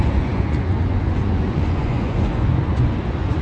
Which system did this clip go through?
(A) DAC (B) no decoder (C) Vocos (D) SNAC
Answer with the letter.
C